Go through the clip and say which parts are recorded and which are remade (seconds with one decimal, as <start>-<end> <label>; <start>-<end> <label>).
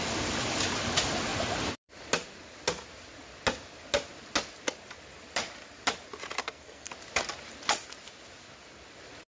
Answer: 0.0-6.4 recorded; 6.4-6.9 remade; 6.9-9.3 recorded